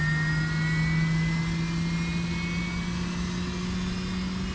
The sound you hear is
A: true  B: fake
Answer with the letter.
A